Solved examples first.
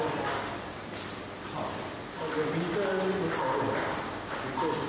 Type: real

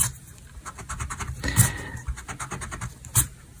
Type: real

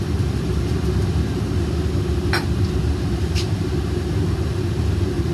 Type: real